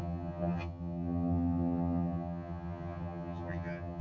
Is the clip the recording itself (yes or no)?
no